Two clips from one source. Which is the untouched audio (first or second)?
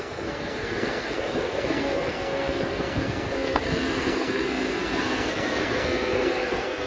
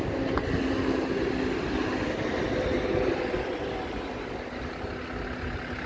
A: second